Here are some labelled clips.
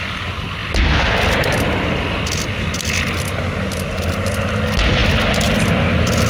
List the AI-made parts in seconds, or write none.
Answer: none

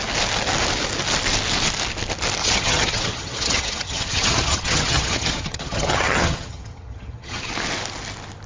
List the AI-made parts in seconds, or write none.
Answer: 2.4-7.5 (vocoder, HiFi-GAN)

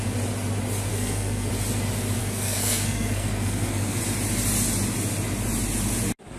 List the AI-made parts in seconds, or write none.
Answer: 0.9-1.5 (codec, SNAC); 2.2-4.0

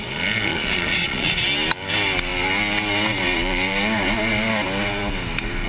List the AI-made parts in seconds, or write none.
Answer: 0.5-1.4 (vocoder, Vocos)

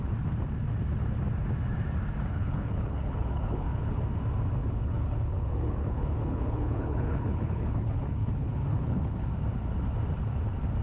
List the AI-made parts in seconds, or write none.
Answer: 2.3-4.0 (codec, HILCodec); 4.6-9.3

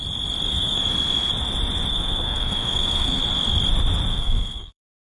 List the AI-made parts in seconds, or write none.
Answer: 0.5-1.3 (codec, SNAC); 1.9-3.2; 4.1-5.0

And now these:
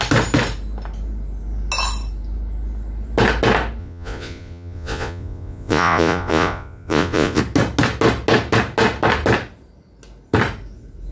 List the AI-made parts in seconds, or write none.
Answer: 3.8-7.4 (vocoder, Vocos)